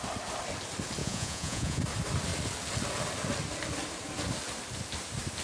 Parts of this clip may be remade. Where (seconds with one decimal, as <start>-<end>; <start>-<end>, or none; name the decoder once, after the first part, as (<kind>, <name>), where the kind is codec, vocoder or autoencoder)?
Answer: 1.0-1.8 (vocoder, Vocos)